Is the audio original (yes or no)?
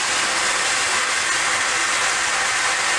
yes